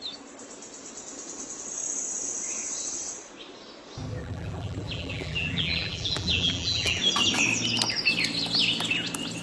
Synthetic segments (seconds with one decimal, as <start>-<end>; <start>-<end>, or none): 4.2-7.0